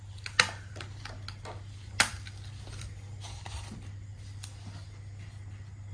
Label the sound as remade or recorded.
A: recorded